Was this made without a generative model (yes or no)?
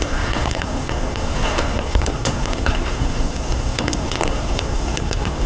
no